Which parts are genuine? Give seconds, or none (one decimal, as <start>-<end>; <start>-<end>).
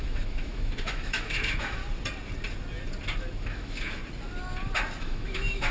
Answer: 1.8-3.4; 4.0-5.0